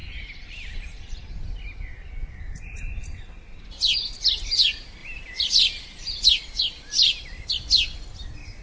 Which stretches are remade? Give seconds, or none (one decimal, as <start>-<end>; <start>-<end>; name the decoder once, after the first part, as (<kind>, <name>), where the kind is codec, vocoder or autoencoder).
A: 0.0-1.3 (vocoder, BigVGAN v2); 5.0-7.5